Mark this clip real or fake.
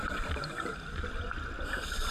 real